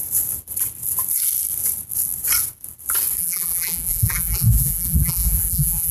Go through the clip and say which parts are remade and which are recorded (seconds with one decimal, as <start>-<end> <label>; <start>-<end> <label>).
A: 0.0-3.2 recorded; 3.2-5.9 remade